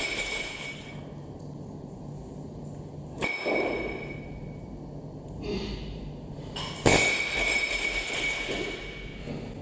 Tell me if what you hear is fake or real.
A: real